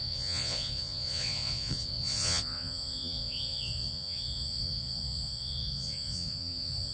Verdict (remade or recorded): remade